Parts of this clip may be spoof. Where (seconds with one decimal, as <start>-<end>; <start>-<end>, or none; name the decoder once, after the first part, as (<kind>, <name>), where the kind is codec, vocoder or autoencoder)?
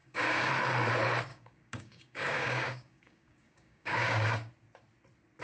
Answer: 0.0-0.5 (codec, DAC); 1.3-4.5